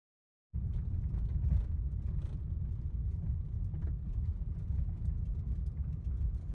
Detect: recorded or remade recorded